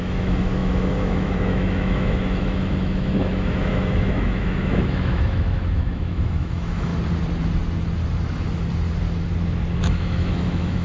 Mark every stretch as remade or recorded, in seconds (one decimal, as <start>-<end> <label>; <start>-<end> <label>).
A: 0.0-6.9 remade; 6.9-9.8 recorded; 9.8-10.8 remade

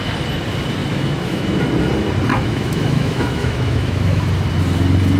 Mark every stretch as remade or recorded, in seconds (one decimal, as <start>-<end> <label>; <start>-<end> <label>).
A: 0.0-0.8 recorded; 0.8-1.6 remade; 1.6-2.3 recorded; 2.3-4.3 remade; 4.3-5.2 recorded